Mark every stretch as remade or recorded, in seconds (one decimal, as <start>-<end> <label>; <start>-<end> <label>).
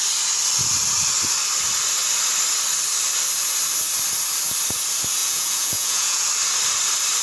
0.0-5.2 recorded; 5.2-6.3 remade; 6.3-7.2 recorded